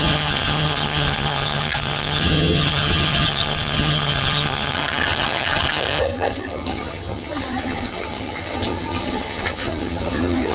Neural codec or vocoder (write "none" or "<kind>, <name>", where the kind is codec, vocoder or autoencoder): vocoder, HiFi-GAN